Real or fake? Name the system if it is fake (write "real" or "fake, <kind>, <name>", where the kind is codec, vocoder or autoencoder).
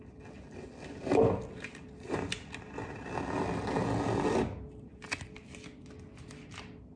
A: real